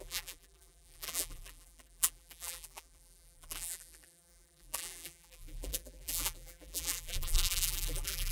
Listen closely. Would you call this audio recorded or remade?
remade